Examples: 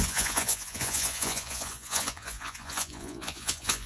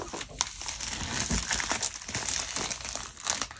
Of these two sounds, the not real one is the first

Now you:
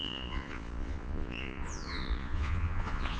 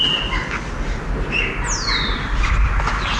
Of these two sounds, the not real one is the first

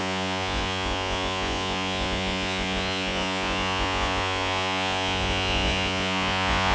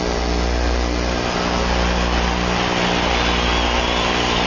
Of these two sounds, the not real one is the first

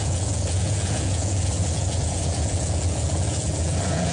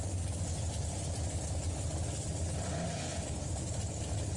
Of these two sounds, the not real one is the first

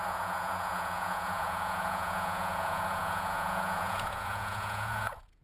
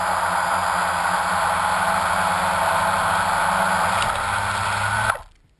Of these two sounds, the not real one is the first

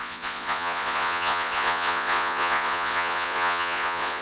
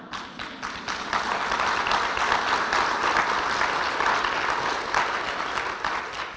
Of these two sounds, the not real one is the first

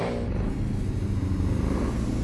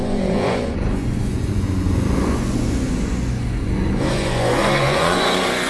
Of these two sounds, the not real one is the second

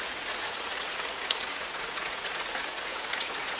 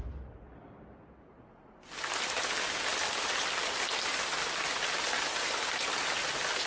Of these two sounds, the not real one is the first